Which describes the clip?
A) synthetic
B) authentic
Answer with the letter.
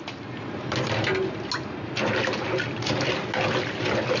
B